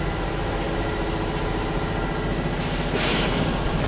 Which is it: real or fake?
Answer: real